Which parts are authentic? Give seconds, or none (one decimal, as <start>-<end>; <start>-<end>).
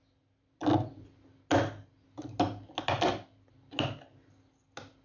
0.0-5.0